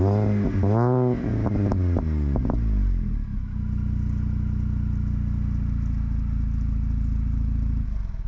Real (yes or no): yes